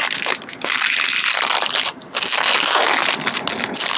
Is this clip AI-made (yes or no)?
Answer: no